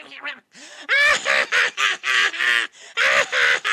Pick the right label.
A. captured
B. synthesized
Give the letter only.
B